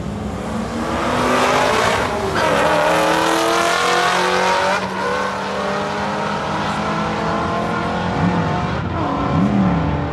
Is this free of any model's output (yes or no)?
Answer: yes